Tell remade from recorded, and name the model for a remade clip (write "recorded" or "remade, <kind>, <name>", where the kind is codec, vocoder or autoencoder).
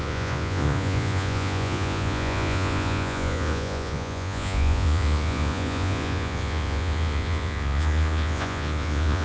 remade, vocoder, Vocos